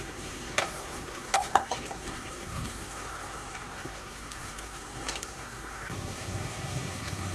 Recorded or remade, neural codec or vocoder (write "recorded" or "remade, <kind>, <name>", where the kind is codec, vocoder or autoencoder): remade, codec, SNAC